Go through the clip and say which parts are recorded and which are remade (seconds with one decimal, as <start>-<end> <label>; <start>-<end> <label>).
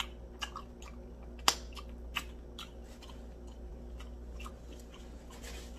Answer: 0.0-5.8 recorded